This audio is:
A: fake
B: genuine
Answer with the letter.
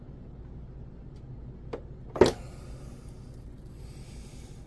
B